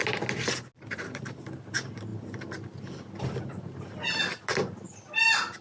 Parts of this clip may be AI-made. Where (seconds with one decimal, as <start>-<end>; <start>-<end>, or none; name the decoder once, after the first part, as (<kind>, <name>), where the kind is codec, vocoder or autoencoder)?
none

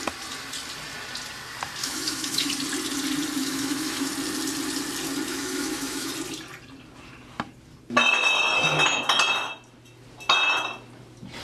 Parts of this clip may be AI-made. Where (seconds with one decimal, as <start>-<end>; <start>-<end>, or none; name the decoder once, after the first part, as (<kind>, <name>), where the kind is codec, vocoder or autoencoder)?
1.8-2.5 (autoencoder, DAC-VAE); 3.4-4.1; 5.3-6.1